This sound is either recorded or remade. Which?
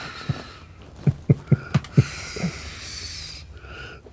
recorded